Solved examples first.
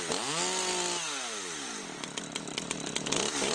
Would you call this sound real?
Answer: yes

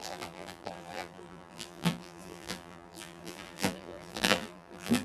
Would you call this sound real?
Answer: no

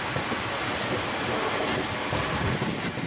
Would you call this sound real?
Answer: yes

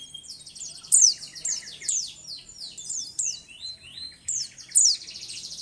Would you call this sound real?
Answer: no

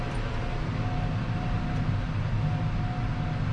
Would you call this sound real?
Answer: yes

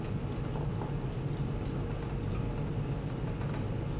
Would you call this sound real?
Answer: yes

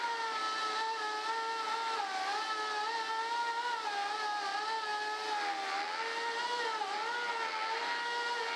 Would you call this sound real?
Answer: yes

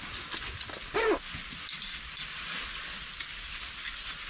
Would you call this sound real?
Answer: yes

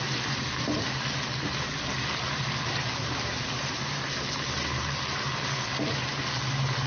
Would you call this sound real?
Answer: yes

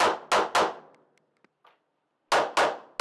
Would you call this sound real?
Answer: yes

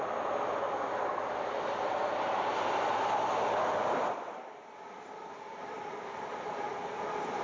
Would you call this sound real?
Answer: no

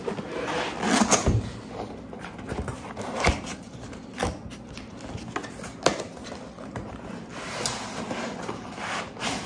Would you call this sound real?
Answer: yes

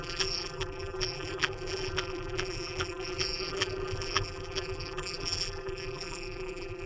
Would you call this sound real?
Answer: no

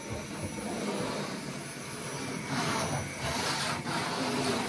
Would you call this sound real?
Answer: yes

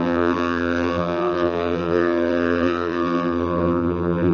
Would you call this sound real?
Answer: no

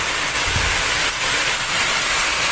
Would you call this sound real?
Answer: yes